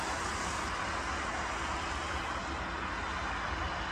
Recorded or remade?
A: recorded